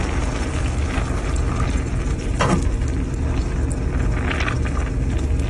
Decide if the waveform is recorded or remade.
recorded